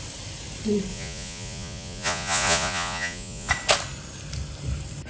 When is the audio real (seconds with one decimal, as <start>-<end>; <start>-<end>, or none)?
0.0-0.9; 3.5-5.1